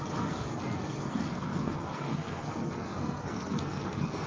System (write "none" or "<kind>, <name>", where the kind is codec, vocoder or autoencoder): codec, SNAC